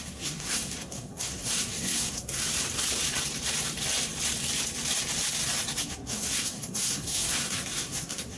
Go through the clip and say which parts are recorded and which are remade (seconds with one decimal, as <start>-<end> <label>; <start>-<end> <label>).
0.0-2.4 remade; 2.4-5.8 recorded; 5.8-8.4 remade